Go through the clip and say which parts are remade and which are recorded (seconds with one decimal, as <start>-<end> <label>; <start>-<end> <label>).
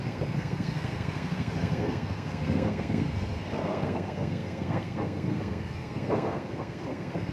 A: 0.0-7.3 remade